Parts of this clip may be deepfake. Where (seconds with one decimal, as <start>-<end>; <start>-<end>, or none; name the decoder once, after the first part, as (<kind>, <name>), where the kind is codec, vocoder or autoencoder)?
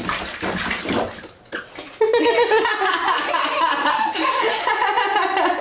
none